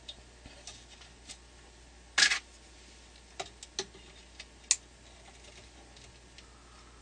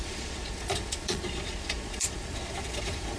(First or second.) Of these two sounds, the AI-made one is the second